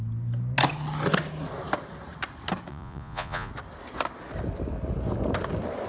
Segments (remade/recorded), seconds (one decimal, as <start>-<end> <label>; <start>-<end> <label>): 0.0-2.7 recorded; 2.7-3.5 remade; 3.5-5.9 recorded